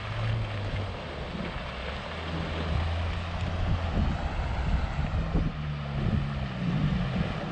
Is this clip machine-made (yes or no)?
no